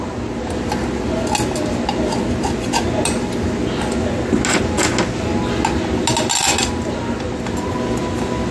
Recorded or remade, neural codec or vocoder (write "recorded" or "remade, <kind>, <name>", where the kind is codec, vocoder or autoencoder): recorded